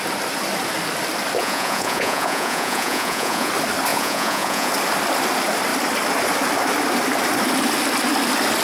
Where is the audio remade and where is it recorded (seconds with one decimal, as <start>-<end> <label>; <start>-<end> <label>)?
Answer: 0.0-1.4 recorded; 1.4-3.5 remade; 3.5-3.9 recorded; 3.9-4.7 remade; 4.7-8.6 recorded